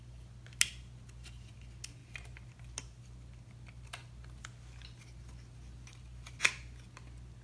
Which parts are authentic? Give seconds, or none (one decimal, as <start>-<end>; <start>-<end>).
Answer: 0.0-7.4